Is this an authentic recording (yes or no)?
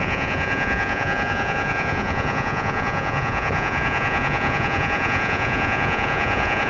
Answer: no